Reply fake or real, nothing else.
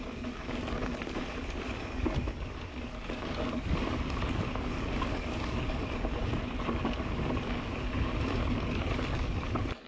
fake